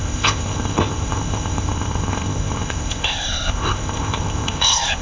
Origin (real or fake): fake